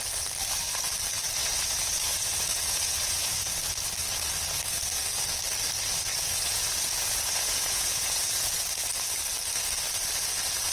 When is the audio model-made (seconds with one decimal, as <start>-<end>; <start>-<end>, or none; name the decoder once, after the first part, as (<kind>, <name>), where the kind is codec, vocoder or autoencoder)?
1.4-3.4 (vocoder, Vocos); 6.1-8.5

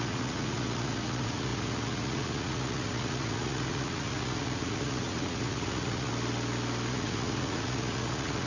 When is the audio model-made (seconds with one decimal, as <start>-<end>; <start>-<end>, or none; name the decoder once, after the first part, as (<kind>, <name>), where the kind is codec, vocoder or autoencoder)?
0.0-6.1 (vocoder, Vocos); 6.9-8.5

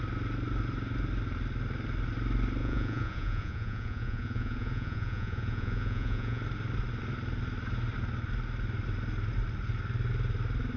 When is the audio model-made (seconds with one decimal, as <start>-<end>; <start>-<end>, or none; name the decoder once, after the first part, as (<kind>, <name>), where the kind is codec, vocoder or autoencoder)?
2.6-6.4 (vocoder, Vocos)

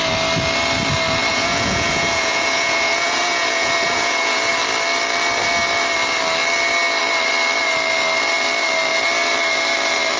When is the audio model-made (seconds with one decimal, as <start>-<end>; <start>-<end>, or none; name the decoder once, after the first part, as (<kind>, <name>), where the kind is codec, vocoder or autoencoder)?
1.3-4.5 (vocoder, Vocos)

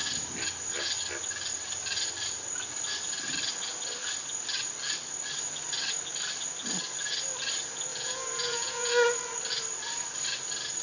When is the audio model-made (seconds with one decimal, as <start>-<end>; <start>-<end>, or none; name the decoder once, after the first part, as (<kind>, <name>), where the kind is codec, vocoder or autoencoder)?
7.9-8.9 (vocoder, Vocos)

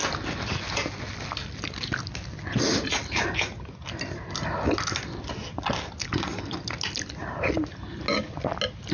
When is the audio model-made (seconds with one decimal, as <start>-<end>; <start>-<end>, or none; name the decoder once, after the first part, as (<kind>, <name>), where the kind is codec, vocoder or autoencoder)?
none

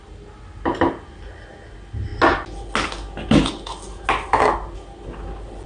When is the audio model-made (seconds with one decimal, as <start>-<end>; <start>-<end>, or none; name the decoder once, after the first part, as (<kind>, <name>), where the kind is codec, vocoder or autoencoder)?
none

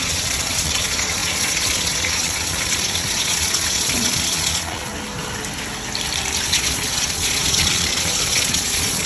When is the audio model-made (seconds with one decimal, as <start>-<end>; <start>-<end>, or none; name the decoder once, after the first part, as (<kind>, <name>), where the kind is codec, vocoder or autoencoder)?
0.0-4.9 (vocoder, Vocos); 6.4-9.1